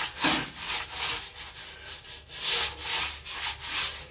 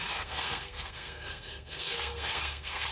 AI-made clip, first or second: second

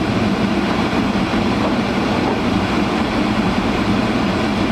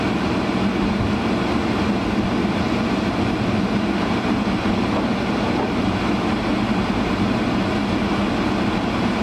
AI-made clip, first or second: first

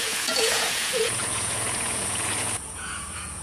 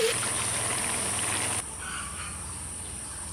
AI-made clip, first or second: first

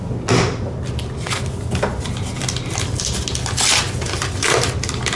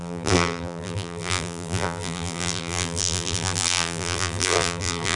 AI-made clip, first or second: second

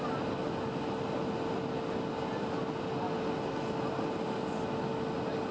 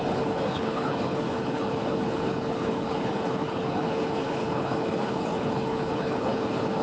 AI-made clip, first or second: second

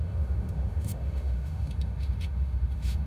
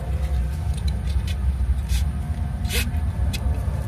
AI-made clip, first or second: first